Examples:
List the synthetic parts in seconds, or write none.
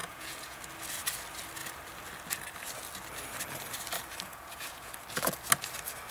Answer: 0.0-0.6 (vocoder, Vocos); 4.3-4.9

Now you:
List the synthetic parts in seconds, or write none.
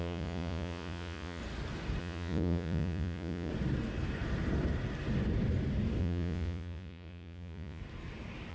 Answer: 0.0-1.4 (vocoder, Vocos); 2.0-3.5; 6.0-7.8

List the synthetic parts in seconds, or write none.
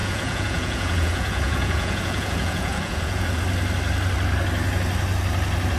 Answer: 0.0-3.4 (vocoder, Vocos)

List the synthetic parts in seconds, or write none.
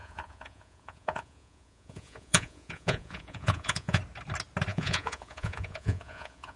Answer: 0.0-4.0 (vocoder, Vocos); 4.7-6.6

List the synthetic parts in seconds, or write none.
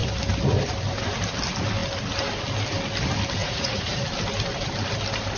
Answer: 3.4-4.0 (vocoder, Vocos)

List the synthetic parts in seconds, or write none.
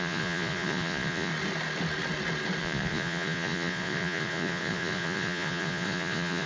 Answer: 0.0-1.3 (vocoder, Vocos); 2.6-6.5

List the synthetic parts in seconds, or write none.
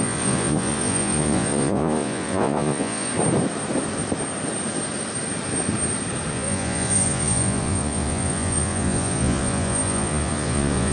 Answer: 0.0-3.1 (vocoder, Vocos); 6.3-10.9